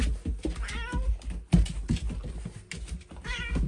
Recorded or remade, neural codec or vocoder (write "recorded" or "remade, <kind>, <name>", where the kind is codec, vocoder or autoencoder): recorded